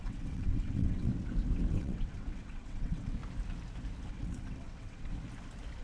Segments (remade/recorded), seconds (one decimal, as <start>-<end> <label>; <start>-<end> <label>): 0.0-1.1 remade; 1.1-1.7 recorded; 1.7-3.2 remade; 3.2-4.1 recorded; 4.1-5.1 remade; 5.1-5.8 recorded